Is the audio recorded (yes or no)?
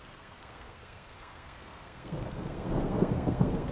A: no